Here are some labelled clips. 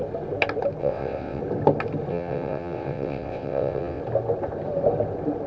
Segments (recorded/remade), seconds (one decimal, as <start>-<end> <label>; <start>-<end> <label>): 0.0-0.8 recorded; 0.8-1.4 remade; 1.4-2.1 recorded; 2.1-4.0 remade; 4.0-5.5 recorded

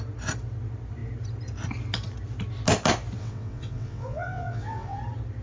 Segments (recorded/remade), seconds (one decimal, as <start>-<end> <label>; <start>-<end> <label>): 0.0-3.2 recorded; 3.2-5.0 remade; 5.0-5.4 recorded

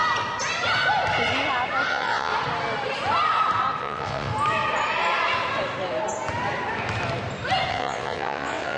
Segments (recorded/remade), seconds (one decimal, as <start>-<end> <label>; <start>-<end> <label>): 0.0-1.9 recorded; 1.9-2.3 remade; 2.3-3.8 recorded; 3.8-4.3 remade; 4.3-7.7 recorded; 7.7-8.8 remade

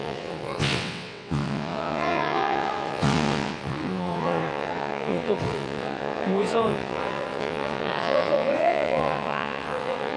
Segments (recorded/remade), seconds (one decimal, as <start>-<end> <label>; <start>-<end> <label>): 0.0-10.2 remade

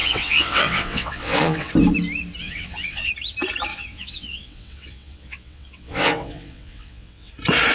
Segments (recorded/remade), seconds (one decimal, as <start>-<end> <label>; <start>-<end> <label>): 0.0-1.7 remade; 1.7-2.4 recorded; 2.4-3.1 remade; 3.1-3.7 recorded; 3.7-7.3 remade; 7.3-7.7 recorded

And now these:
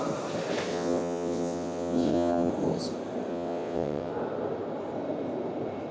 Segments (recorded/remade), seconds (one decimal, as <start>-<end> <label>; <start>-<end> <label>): 0.0-0.7 recorded; 0.7-2.5 remade; 2.5-3.3 recorded; 3.3-4.1 remade; 4.1-5.9 recorded

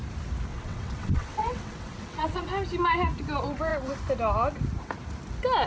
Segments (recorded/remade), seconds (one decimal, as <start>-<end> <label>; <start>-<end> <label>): 0.0-0.5 recorded; 0.5-2.5 remade; 2.5-5.7 recorded